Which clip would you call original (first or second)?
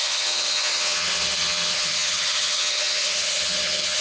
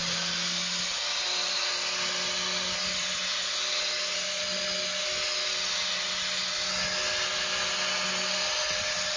second